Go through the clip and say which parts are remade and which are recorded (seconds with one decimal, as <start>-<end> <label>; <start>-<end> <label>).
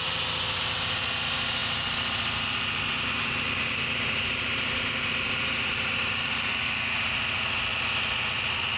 0.0-1.6 recorded; 1.6-6.5 remade; 6.5-8.8 recorded